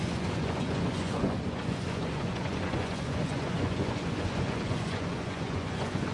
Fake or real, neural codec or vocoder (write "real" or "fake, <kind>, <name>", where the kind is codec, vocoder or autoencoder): fake, vocoder, Vocos